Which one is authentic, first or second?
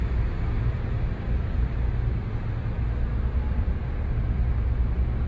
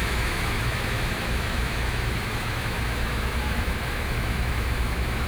first